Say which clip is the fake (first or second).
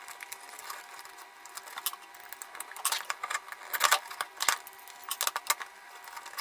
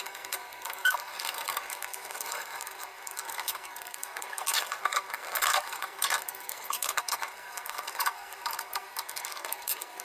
second